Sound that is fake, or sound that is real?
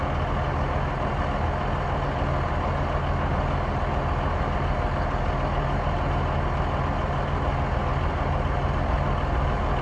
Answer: real